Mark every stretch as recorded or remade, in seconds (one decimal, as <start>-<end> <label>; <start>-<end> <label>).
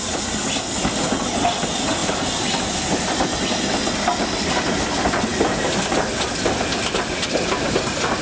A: 0.0-8.2 recorded